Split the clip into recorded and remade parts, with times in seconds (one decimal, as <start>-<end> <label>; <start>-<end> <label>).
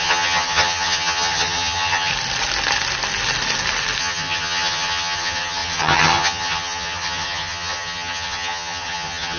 0.0-2.1 remade; 2.1-4.0 recorded; 4.0-9.4 remade